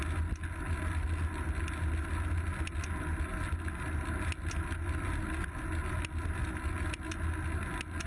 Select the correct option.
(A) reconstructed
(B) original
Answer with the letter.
B